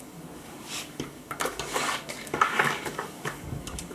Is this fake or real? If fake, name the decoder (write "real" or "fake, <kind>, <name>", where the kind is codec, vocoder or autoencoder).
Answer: fake, codec, DAC